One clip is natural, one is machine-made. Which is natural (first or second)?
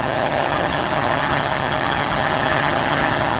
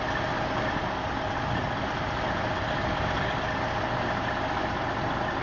second